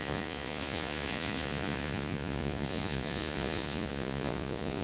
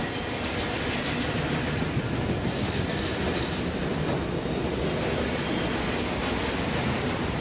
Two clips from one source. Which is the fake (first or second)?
first